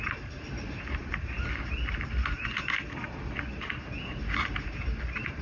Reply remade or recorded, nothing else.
recorded